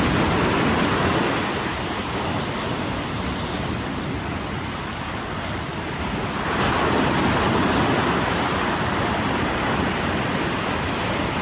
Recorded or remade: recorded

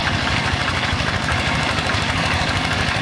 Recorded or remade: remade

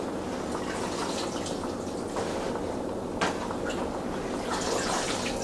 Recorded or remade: recorded